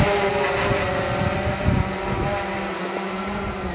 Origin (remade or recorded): recorded